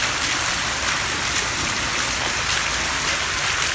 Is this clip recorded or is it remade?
recorded